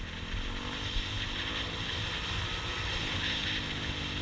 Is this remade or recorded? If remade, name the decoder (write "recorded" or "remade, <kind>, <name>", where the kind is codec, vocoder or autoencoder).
recorded